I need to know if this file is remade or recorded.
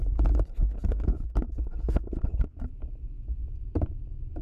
recorded